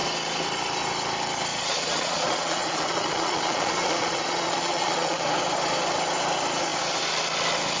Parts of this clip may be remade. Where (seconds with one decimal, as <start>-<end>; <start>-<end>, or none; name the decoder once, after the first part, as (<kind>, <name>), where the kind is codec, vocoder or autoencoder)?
1.5-5.2 (vocoder, Vocos)